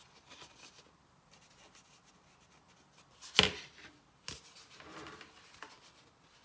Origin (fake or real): real